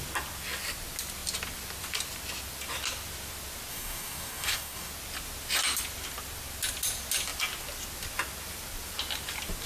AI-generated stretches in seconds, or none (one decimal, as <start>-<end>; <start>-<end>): 3.7-4.9